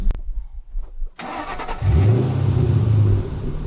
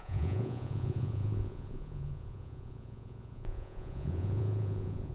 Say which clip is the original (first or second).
first